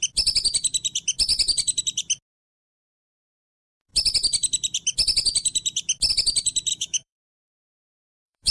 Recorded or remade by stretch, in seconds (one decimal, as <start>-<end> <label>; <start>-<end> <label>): 0.0-6.7 recorded; 6.7-7.4 remade; 7.4-7.9 recorded; 7.9-8.5 remade